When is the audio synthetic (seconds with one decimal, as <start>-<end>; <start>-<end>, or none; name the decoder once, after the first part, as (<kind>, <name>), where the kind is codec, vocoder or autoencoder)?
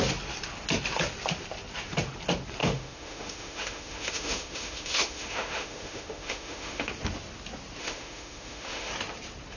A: 2.6-6.9 (autoencoder, DAC-VAE); 7.8-8.9